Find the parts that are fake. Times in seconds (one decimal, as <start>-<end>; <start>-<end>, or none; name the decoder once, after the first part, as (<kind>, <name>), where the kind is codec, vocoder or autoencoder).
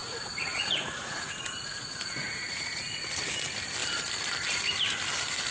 0.0-3.2 (vocoder, Vocos)